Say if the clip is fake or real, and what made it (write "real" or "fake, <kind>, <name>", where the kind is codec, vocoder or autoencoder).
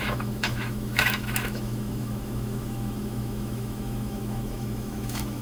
fake, autoencoder, DAC-VAE